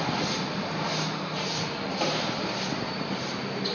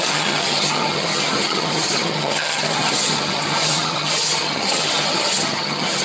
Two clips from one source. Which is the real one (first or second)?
first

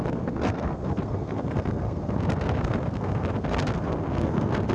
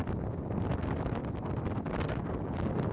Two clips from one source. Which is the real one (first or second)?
second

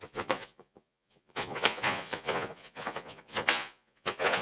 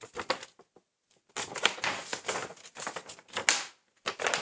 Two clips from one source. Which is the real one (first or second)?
second